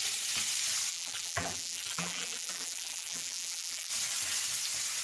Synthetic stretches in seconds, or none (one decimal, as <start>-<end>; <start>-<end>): 0.9-3.9